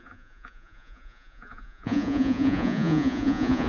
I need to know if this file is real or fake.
fake